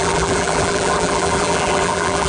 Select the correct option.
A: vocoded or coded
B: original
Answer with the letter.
A